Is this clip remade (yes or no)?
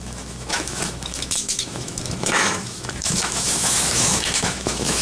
yes